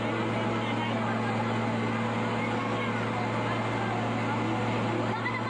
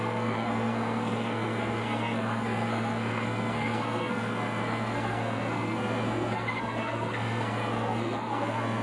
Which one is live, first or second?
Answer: first